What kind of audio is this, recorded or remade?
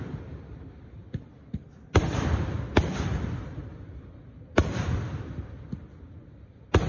recorded